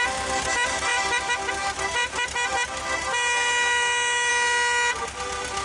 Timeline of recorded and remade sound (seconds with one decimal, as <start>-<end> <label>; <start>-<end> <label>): 0.0-5.6 recorded